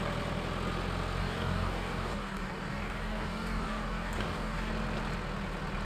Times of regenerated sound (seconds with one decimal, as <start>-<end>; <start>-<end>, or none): 1.2-4.7

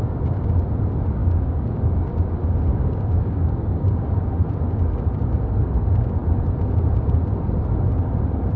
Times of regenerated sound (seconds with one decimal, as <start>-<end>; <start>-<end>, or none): 1.2-1.7; 2.7-4.2

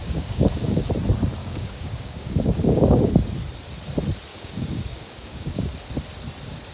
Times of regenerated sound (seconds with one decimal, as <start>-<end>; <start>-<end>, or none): 0.0-0.9; 1.4-3.1; 4.3-5.7

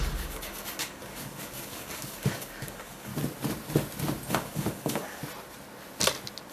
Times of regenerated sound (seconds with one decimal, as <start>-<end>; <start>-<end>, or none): 0.0-3.1; 4.3-5.2

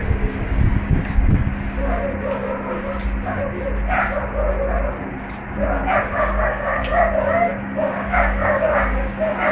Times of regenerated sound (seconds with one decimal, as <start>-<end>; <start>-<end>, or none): 0.0-1.5; 6.0-6.9; 7.5-9.5

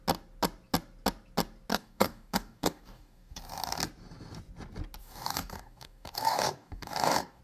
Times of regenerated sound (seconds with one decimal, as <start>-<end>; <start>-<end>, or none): 1.7-3.4; 5.0-7.4